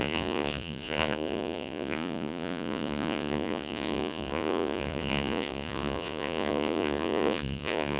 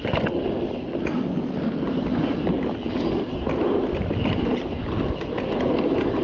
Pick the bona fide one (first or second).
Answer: second